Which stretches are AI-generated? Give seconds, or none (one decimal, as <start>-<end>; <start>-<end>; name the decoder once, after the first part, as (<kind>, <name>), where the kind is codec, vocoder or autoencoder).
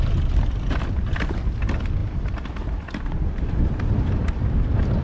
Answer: 2.0-3.5 (vocoder, BigVGAN v2)